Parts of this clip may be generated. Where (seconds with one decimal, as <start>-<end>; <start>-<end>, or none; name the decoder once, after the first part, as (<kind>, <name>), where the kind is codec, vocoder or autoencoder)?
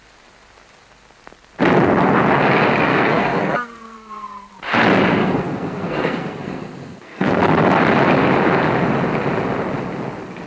2.9-4.5 (codec, SNAC); 5.2-7.4